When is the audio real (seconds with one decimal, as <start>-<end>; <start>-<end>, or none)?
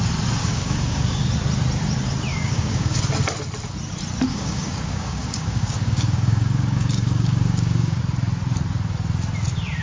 0.0-0.4; 1.3-2.3; 3.0-4.3; 8.0-9.8